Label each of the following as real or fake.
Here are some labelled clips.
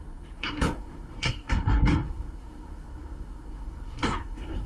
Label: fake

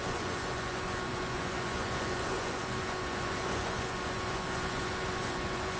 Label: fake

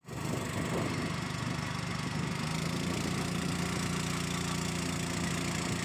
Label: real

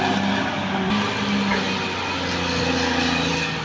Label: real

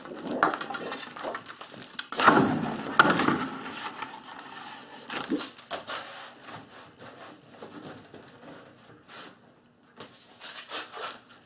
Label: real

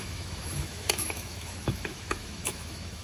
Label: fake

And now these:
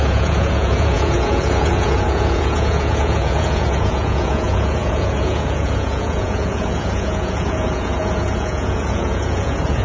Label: fake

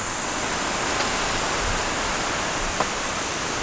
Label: real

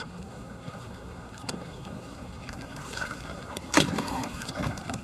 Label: fake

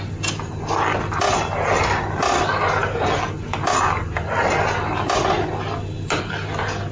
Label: real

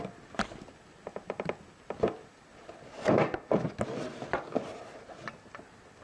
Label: real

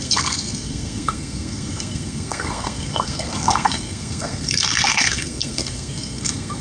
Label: fake